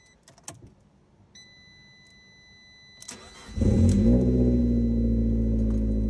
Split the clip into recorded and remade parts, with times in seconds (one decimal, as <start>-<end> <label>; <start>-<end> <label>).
0.0-6.1 recorded

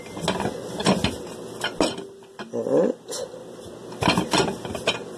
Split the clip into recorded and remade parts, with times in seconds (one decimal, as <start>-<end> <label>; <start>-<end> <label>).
0.0-5.2 recorded

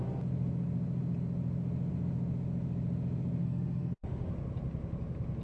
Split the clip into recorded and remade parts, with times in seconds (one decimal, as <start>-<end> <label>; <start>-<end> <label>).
0.0-3.4 recorded; 3.4-4.3 remade; 4.3-5.4 recorded

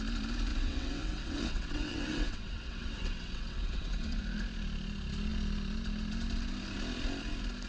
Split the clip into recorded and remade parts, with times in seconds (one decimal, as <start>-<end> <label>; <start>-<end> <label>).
0.0-0.5 recorded; 0.5-4.2 remade; 4.2-7.7 recorded